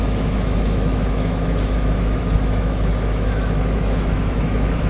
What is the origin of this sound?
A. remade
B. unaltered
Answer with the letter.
A